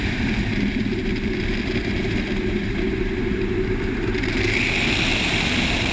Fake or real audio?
real